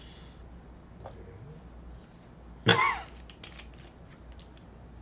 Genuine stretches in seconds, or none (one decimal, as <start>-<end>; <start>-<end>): 0.0-5.0